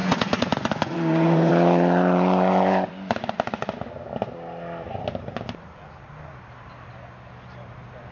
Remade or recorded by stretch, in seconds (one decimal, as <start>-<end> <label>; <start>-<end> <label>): 0.0-1.5 remade; 1.5-8.1 recorded